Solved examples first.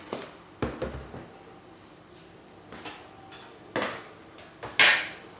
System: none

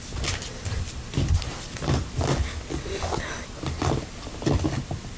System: none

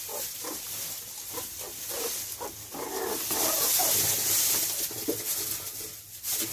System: none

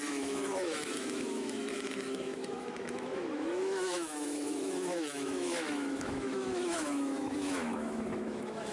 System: autoencoder, DAC-VAE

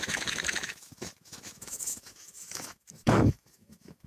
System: autoencoder, DAC-VAE